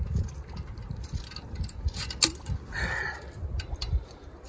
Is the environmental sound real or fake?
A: real